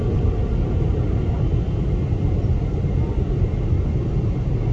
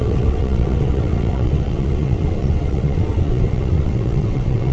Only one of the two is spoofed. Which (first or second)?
second